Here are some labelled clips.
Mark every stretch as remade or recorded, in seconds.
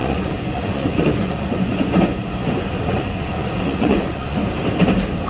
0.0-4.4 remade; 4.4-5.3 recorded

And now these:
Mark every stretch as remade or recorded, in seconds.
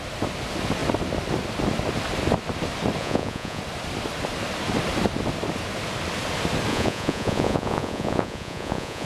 0.0-3.0 recorded; 3.0-3.6 remade; 3.6-6.7 recorded; 6.7-9.1 remade